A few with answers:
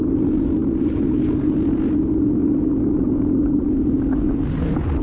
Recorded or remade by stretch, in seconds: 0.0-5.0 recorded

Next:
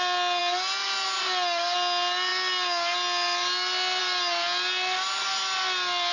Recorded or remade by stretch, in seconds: 0.0-6.1 recorded